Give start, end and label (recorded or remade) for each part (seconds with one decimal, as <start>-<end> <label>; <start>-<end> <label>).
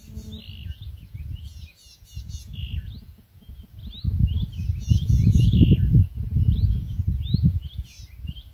0.0-0.6 recorded; 0.6-3.5 remade; 3.5-4.7 recorded; 4.7-7.0 remade; 7.0-8.5 recorded